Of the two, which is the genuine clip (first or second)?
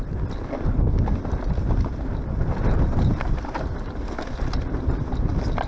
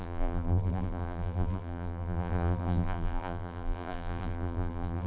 first